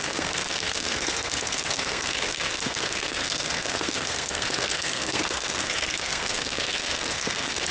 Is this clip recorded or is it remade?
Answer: remade